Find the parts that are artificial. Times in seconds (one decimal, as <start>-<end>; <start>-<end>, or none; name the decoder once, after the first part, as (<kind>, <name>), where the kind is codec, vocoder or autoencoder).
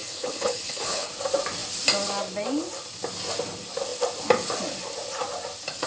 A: 0.0-1.1 (codec, HILCodec)